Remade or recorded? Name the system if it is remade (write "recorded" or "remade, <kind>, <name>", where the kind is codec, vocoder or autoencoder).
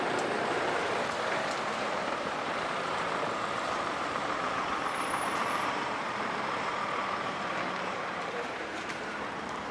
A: remade, vocoder, BigVGAN v2